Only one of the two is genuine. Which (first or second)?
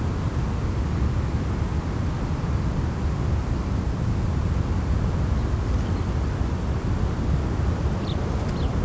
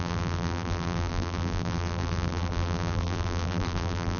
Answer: first